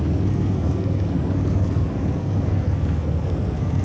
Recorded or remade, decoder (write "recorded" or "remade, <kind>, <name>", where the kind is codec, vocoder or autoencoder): remade, codec, SNAC